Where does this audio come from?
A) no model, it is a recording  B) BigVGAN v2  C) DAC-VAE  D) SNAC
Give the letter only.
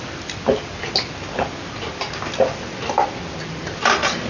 A